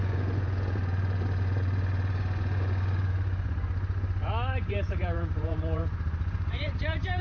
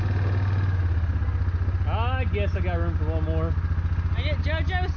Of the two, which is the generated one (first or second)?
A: first